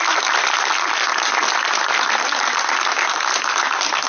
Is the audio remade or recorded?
recorded